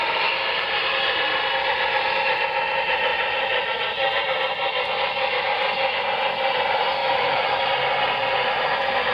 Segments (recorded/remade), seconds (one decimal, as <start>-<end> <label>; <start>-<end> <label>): 0.0-7.0 recorded; 7.0-7.6 remade; 7.6-9.1 recorded